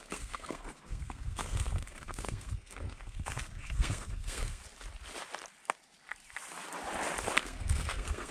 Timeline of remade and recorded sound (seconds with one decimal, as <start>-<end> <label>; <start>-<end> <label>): 0.0-4.6 remade; 4.6-7.4 recorded; 7.4-8.3 remade